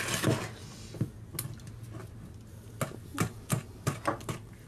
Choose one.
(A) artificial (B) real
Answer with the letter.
B